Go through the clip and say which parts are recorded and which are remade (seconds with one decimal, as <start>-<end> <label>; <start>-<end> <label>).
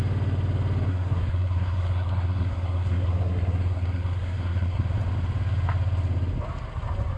0.0-0.9 recorded; 0.9-4.9 remade; 4.9-7.2 recorded